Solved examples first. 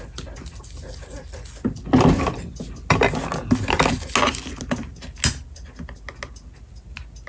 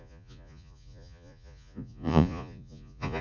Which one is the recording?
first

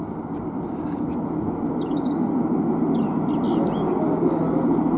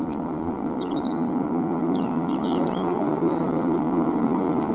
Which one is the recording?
first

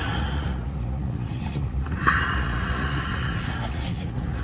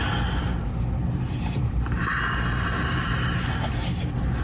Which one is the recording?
second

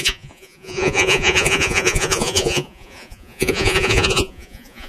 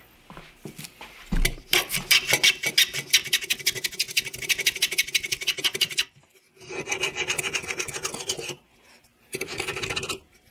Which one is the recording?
second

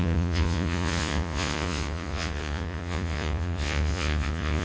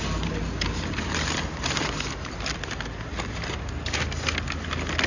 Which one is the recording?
second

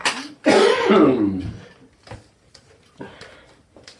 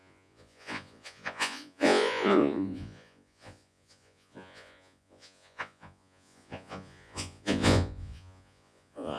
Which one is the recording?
first